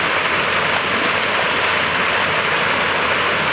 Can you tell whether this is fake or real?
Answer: fake